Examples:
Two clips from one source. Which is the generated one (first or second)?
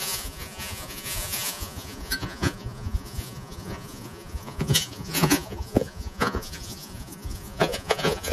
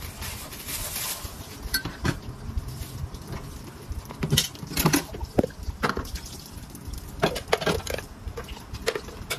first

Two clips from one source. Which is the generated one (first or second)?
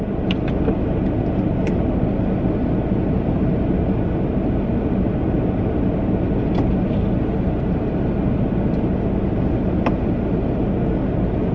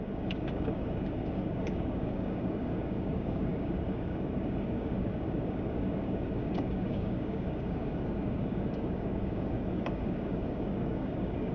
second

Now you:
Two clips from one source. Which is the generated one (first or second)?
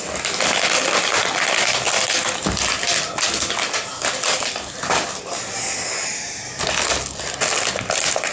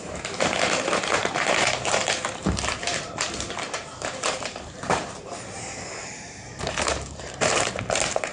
second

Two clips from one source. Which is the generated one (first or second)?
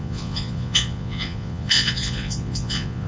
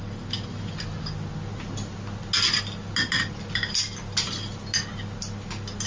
first